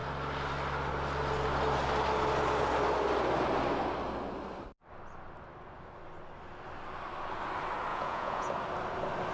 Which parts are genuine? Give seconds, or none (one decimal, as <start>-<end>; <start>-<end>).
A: 0.0-7.9; 8.5-9.3